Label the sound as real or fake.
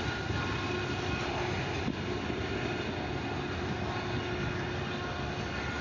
real